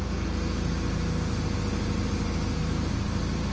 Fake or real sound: real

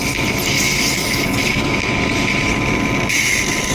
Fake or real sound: real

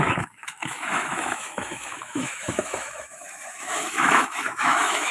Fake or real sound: fake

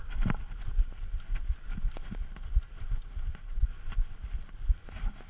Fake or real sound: real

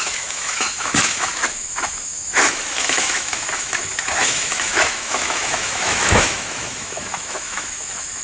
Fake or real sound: fake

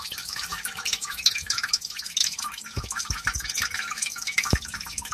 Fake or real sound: fake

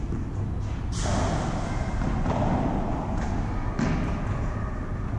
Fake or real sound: real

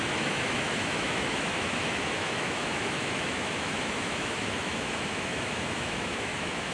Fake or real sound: fake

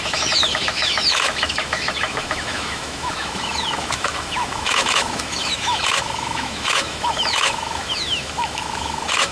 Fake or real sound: fake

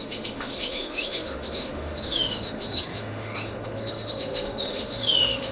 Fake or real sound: fake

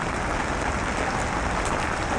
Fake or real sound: real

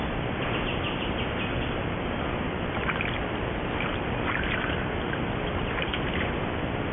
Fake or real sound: real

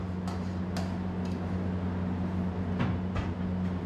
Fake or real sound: real